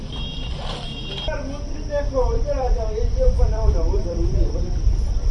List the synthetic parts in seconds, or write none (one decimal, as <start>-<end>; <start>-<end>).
0.0-0.9; 2.0-5.3